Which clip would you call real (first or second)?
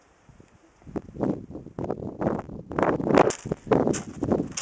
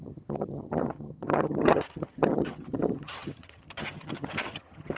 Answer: first